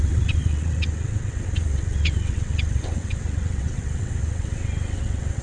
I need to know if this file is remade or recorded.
remade